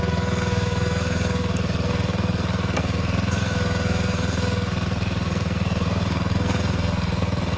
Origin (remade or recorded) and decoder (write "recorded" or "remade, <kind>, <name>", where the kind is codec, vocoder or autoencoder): remade, codec, SNAC